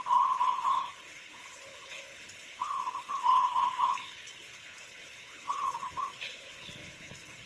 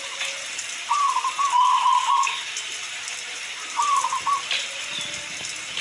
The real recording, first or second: second